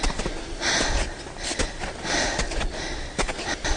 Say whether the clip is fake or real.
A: real